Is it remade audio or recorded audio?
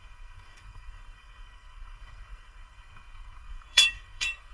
remade